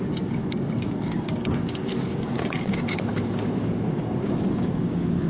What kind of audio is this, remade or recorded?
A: remade